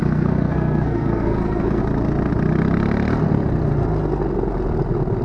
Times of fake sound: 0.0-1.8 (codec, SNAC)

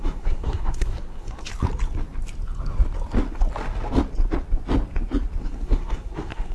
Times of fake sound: 0.0-1.5 (codec, SNAC); 5.4-6.5

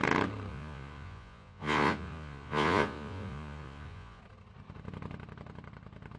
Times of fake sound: 0.5-4.2 (vocoder, Vocos)

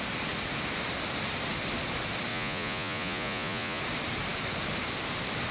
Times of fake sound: 2.3-3.8 (vocoder, Vocos)

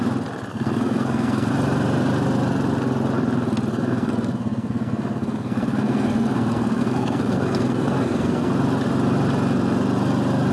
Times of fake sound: 0.5-1.5 (codec, SNAC); 3.7-8.5